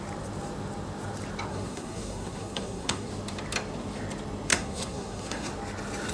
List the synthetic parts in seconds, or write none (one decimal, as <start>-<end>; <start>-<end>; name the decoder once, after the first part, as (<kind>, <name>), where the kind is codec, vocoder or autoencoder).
1.5-3.1 (codec, SNAC); 4.5-5.5